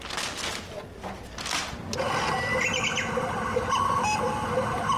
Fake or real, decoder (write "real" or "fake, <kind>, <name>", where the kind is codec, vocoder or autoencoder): real